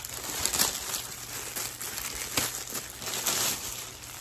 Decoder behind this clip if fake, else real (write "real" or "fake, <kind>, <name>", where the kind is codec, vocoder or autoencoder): real